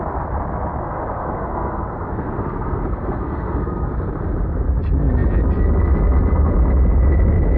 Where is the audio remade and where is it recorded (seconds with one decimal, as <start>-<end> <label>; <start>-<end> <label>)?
0.0-0.8 recorded; 0.8-3.9 remade; 3.9-7.6 recorded